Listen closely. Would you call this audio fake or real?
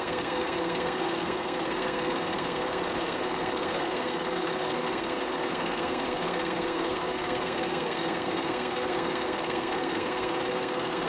fake